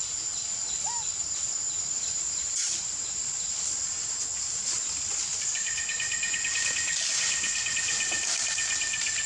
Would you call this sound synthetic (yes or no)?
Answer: no